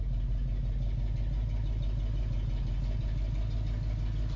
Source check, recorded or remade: recorded